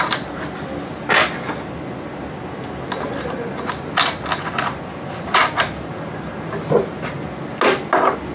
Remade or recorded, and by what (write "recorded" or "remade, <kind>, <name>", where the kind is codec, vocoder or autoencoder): recorded